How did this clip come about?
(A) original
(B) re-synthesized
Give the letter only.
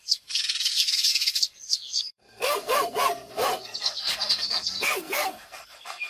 B